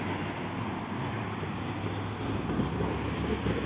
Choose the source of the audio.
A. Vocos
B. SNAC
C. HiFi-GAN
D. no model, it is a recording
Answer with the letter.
D